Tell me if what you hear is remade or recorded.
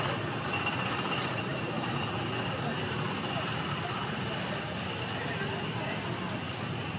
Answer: recorded